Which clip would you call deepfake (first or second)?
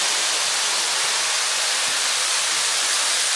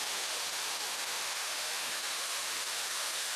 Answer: second